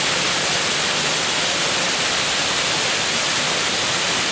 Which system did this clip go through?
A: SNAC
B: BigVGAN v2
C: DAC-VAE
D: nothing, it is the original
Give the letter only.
D